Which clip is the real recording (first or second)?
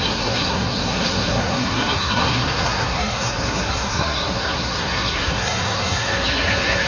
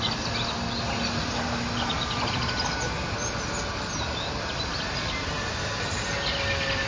second